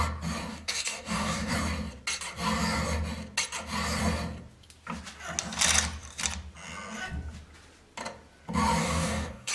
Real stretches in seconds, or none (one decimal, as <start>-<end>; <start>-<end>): 0.0-0.5; 1.5-8.8